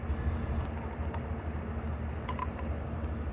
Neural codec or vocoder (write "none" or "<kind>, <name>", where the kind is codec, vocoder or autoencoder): none